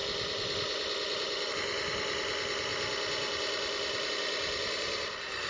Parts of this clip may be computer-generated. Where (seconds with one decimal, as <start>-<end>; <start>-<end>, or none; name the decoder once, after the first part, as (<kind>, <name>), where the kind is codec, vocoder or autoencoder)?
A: none